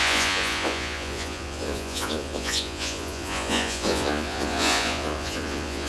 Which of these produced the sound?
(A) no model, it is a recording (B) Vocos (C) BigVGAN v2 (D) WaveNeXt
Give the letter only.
B